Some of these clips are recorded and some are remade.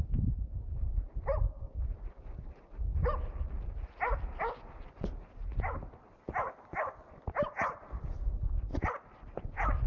recorded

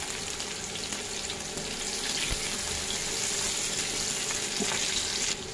recorded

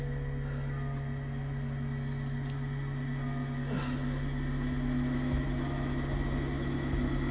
recorded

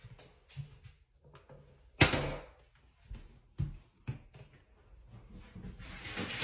recorded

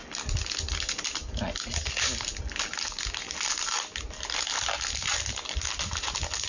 recorded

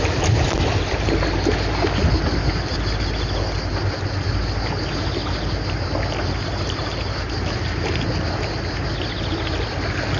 recorded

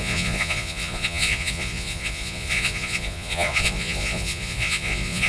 remade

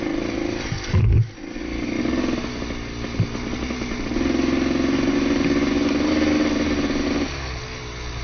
recorded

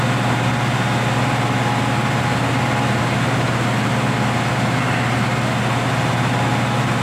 recorded